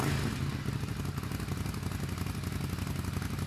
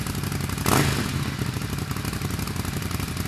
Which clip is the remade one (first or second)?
second